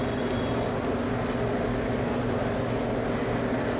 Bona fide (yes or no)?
yes